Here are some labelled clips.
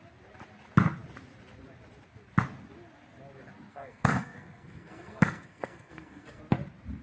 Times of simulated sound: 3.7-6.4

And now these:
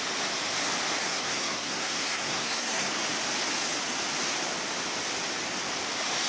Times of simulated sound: 1.0-2.9

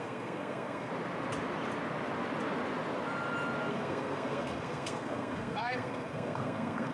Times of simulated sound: 0.0-0.9; 3.7-6.9

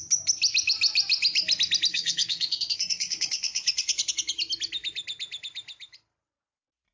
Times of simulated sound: 1.9-3.6

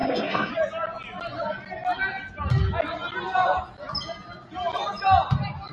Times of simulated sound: 0.0-0.5